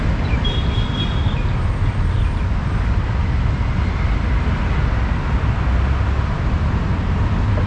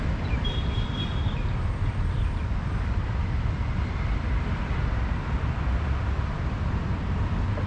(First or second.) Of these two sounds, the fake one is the second